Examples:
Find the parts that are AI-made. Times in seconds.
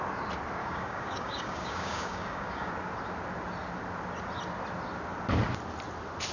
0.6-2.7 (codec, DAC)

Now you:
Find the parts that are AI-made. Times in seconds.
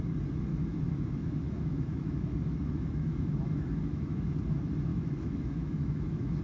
0.5-4.3 (autoencoder, DAC-VAE); 4.9-6.4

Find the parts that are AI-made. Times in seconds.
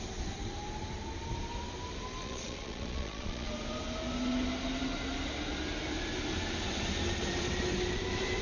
2.2-3.5 (vocoder, Vocos)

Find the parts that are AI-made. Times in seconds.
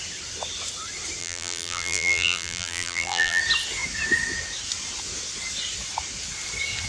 1.2-3.4 (vocoder, BigVGAN v2)